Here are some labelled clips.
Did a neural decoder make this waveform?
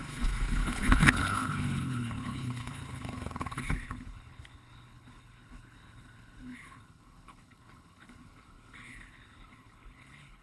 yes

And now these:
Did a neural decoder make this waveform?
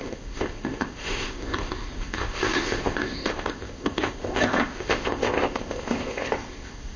yes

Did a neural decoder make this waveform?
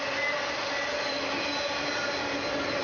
no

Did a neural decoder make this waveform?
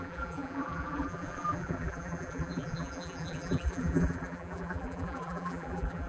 yes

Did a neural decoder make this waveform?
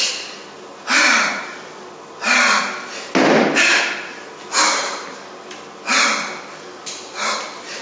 no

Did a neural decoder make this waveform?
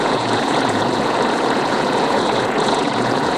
yes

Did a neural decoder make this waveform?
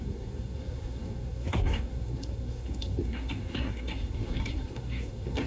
yes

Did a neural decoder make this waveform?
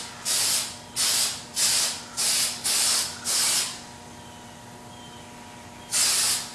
no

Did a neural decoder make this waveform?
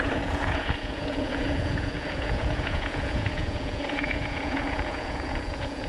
yes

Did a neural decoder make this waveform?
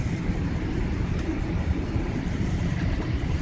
no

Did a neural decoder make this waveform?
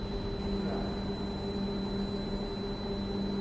no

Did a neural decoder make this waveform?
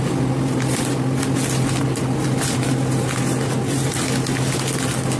no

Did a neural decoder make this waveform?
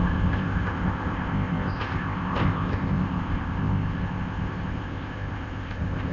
yes